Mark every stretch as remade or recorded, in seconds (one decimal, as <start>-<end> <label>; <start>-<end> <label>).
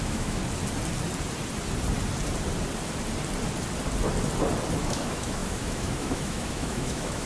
0.0-0.4 remade; 0.4-4.8 recorded; 4.8-7.3 remade